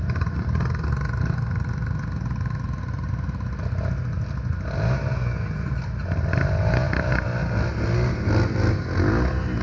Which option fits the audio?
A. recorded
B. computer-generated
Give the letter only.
A